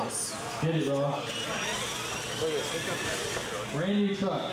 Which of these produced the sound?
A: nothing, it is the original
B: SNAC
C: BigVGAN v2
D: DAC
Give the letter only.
A